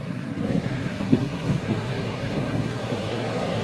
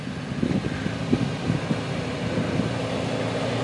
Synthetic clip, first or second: first